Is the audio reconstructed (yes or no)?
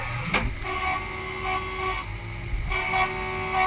no